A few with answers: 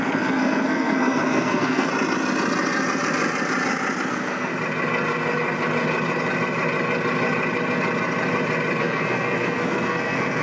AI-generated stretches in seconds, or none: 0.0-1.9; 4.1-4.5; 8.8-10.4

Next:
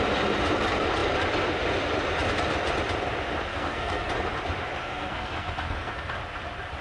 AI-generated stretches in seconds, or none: 3.5-4.1; 4.8-6.1

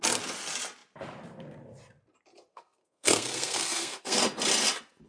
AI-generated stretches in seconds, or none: 2.5-4.2

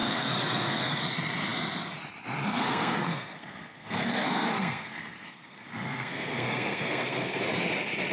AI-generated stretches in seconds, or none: 0.0-1.0; 2.5-7.4

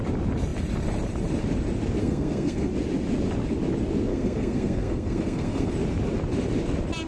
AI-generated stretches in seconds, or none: 2.0-2.7; 4.1-5.7

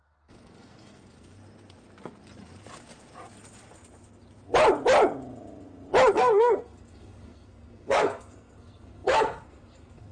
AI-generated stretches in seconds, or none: 0.0-1.4; 6.1-10.1